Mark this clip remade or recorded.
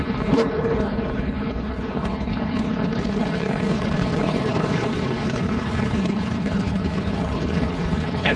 remade